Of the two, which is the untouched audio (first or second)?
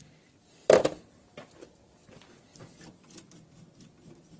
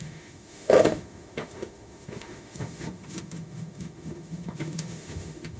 first